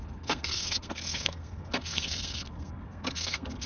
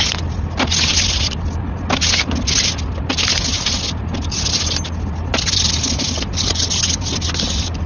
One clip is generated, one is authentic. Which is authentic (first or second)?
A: second